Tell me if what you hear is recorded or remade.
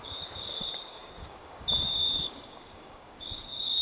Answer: remade